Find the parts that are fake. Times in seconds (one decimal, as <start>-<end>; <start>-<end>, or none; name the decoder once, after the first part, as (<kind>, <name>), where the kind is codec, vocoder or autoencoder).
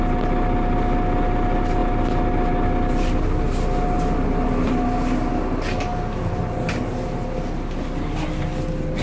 none